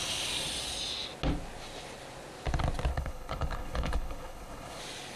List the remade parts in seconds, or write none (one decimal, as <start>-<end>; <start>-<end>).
2.9-4.8